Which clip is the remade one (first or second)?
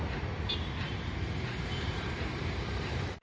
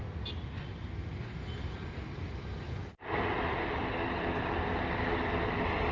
first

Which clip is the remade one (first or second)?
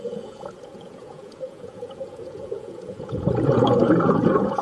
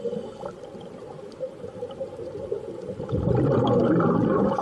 first